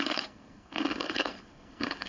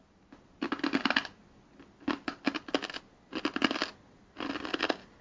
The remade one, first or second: first